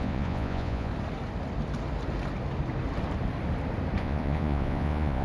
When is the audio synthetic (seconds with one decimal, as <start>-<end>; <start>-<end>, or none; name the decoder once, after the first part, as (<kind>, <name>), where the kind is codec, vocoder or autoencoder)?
0.0-0.9 (vocoder, Vocos); 4.0-5.2